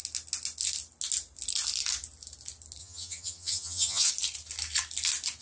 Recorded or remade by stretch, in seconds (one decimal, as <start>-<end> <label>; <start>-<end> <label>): 0.0-2.8 recorded; 2.8-4.1 remade; 4.1-5.4 recorded